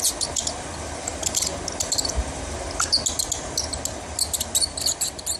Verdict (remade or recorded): recorded